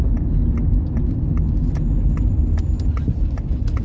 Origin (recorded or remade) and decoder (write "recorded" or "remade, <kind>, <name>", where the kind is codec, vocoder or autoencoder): recorded